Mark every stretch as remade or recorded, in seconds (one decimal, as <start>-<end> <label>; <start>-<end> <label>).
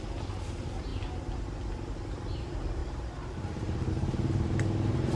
0.0-5.2 recorded